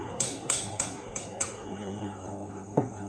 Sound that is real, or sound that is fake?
fake